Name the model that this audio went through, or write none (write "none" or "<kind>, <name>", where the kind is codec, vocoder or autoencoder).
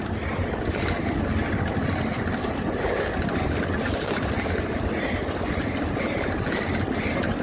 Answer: none